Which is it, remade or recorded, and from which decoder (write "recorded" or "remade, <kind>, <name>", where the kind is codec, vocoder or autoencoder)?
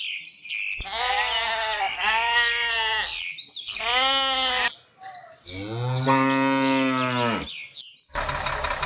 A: recorded